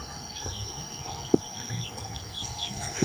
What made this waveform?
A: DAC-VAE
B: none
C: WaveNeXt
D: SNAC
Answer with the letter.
D